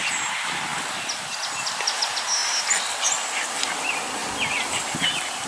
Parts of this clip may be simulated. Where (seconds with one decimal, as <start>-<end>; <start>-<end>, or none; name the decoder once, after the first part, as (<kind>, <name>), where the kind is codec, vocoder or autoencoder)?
none